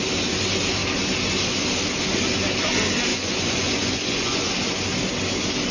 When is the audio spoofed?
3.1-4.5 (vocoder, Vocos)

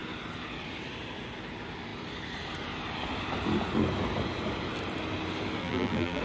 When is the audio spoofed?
5.6-6.2 (vocoder, BigVGAN v2)

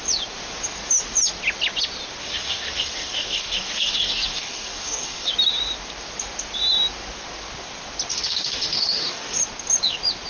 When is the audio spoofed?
2.2-5.3 (codec, DAC); 8.1-9.4

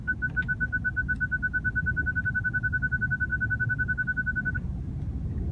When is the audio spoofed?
none

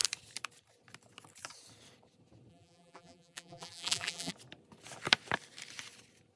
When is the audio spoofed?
2.5-4.3 (vocoder, BigVGAN v2)

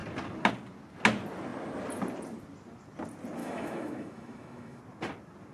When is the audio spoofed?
3.4-4.8 (autoencoder, DAC-VAE)